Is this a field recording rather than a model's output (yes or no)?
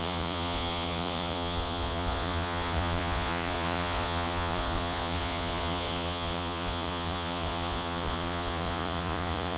no